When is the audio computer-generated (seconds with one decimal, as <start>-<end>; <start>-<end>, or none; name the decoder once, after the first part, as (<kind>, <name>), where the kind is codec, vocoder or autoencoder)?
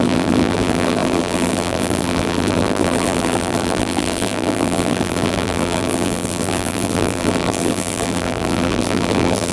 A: 0.0-9.5 (vocoder, BigVGAN v2)